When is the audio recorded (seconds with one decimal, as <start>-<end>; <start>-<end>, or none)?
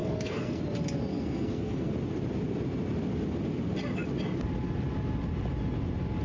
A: 0.6-1.1; 1.9-6.2